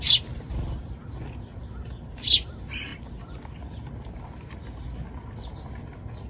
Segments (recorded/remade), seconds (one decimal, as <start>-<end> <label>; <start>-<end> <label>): 0.0-1.0 remade; 1.0-1.6 recorded; 1.6-2.9 remade; 2.9-6.3 recorded